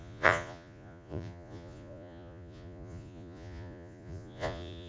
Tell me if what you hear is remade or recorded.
remade